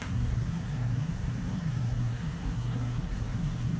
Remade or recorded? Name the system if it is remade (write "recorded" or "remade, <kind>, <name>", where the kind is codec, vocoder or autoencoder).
remade, codec, SNAC